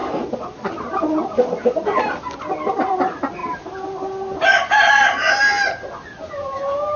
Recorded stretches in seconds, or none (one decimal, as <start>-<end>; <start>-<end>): 0.0-7.0